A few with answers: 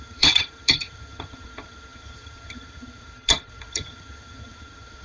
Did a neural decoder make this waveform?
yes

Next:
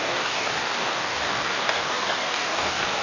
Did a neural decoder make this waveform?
yes